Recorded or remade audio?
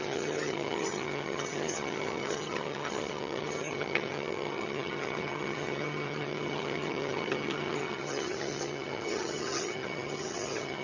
remade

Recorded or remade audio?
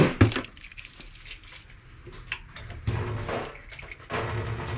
recorded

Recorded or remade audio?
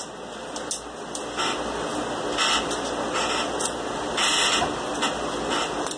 recorded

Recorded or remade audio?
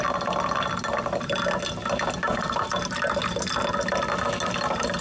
recorded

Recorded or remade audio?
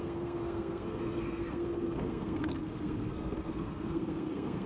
remade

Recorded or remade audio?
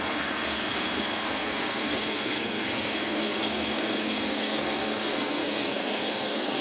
remade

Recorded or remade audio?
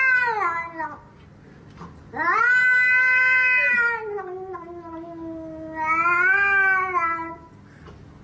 recorded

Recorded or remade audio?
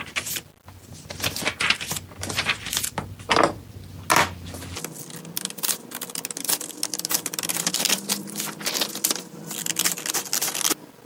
recorded